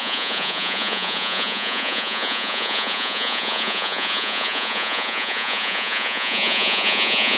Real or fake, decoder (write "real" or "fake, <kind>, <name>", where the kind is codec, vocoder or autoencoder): fake, vocoder, Vocos